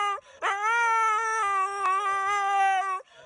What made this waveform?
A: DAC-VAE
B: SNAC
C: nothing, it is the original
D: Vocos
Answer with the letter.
C